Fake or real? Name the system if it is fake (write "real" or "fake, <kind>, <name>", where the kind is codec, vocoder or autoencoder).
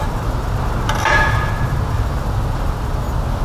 real